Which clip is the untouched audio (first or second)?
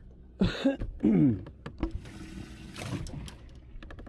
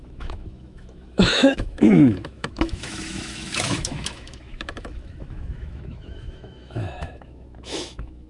first